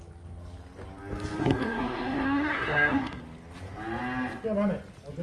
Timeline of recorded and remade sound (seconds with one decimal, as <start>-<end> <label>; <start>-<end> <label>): 0.0-1.4 recorded; 1.4-3.2 remade; 3.2-5.2 recorded